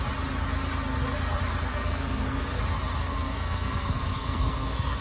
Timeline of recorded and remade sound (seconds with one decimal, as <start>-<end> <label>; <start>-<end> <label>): 0.0-1.7 recorded; 1.7-2.6 remade; 2.6-3.0 recorded; 3.0-5.0 remade